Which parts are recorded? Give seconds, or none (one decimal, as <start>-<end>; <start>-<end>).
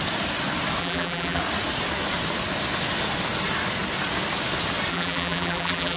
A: 0.0-0.8; 1.4-4.9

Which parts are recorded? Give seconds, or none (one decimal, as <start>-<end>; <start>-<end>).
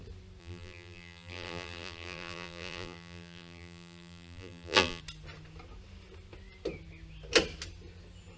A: 0.0-0.4; 5.0-8.4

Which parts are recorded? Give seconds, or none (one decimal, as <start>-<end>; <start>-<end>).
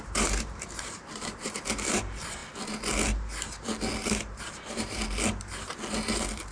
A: 2.4-4.4; 5.0-6.5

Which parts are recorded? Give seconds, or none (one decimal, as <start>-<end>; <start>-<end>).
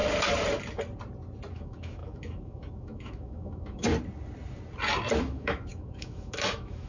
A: 0.0-1.5; 3.9-5.2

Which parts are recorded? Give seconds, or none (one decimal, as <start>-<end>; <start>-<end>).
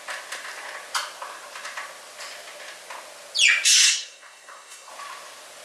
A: 0.0-3.8; 4.9-5.6